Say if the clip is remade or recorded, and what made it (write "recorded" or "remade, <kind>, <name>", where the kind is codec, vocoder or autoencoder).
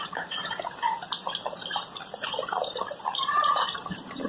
remade, vocoder, BigVGAN v2